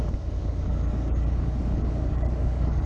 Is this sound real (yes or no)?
no